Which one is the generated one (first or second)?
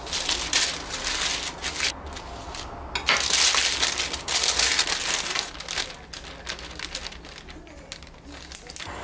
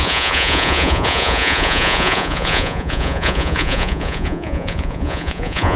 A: second